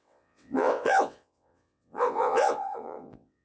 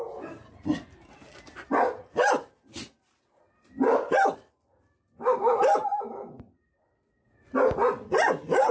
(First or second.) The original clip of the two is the second